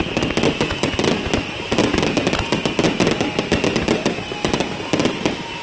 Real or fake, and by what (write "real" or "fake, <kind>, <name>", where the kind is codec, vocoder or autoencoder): real